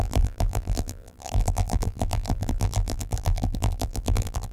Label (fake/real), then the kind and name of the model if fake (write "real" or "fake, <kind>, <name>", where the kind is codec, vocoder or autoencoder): fake, vocoder, BigVGAN v2